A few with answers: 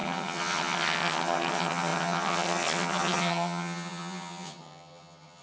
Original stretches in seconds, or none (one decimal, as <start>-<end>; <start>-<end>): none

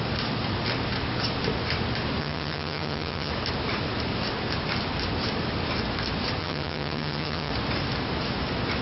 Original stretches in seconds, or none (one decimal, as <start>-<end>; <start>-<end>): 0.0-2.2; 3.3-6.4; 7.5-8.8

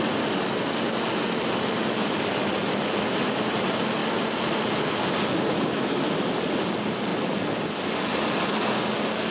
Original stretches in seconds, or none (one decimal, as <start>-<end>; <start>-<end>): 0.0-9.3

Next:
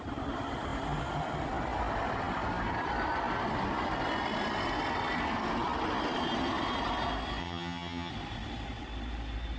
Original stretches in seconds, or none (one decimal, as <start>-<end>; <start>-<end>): 0.0-7.4; 8.1-9.6

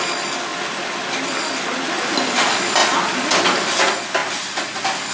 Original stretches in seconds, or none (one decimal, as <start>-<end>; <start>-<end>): 0.0-5.1

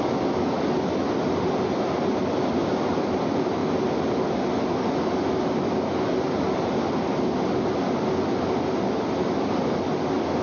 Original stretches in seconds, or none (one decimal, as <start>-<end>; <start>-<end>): 0.0-10.4

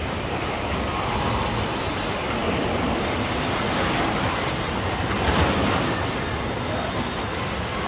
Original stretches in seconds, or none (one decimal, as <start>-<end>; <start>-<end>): 0.0-7.9